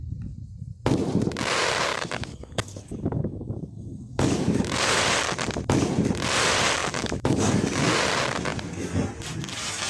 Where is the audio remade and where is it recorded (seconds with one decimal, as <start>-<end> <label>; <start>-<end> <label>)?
0.0-1.9 recorded; 1.9-5.0 remade; 5.0-6.8 recorded; 6.8-7.6 remade; 7.6-9.9 recorded